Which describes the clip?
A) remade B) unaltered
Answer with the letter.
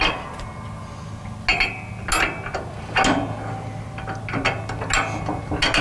B